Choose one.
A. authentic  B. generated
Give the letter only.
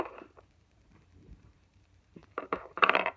B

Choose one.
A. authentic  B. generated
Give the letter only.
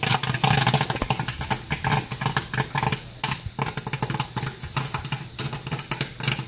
A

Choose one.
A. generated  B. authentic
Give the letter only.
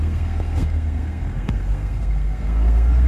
A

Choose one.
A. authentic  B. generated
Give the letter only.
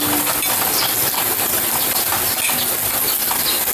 A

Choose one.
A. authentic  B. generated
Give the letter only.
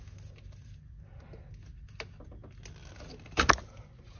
A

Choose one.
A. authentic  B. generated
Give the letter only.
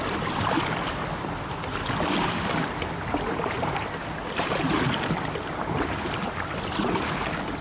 A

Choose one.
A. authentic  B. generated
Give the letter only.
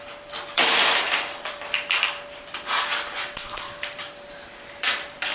B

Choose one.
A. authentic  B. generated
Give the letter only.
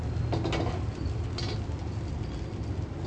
A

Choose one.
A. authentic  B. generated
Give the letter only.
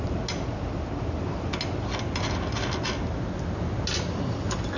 A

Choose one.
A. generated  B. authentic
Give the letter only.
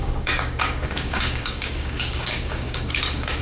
A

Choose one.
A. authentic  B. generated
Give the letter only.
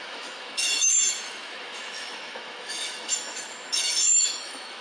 B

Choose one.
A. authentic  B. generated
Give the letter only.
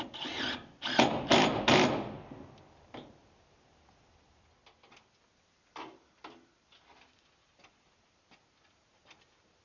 A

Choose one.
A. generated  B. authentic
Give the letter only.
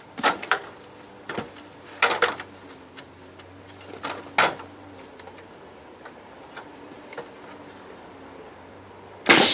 B